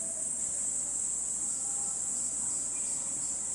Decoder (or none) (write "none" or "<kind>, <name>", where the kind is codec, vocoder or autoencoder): none